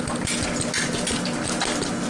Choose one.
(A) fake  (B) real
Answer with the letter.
B